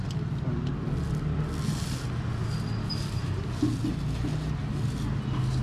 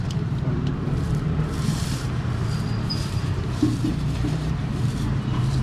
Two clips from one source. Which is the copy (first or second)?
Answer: second